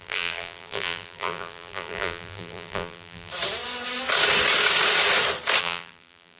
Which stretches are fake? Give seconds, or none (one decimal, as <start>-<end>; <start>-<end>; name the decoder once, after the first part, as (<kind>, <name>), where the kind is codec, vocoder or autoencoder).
0.0-3.3 (vocoder, BigVGAN v2); 5.6-6.4